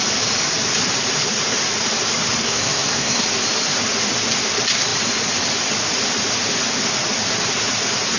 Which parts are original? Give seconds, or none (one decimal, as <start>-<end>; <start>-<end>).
0.0-2.4; 3.2-8.2